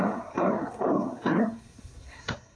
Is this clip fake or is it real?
fake